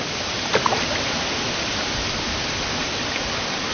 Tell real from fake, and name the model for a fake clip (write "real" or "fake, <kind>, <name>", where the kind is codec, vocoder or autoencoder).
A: real